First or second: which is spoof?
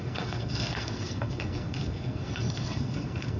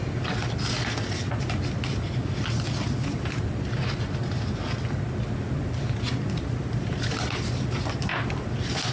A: first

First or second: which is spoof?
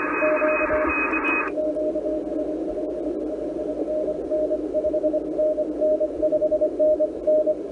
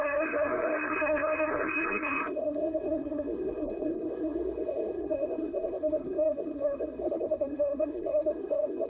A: second